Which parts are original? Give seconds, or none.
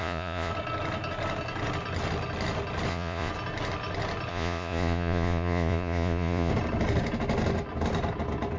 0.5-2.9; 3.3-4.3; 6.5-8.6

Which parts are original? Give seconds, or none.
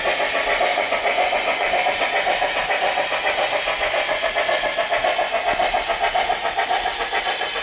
0.0-0.7; 1.8-3.8; 4.3-7.6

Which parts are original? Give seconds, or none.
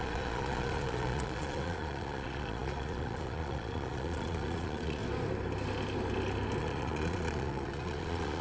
5.0-6.6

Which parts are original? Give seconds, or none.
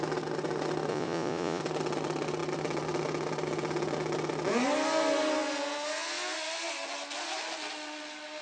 0.0-0.9; 1.6-8.4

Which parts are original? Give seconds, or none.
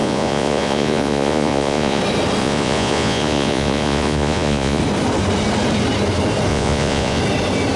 2.0-2.4; 4.8-6.5; 7.2-7.8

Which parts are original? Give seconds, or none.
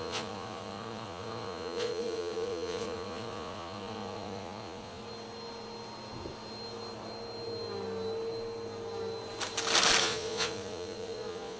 5.0-10.0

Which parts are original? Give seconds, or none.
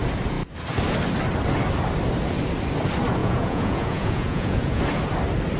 0.0-3.2; 4.8-5.6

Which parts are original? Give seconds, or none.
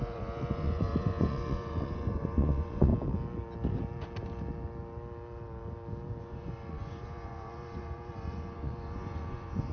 2.9-6.2